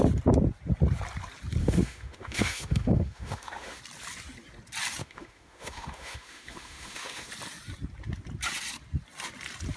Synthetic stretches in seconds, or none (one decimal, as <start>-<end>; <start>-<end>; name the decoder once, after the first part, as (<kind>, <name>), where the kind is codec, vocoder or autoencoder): 1.6-3.8 (autoencoder, DAC-VAE); 5.0-7.3